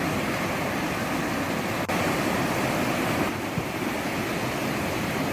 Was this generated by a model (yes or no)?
no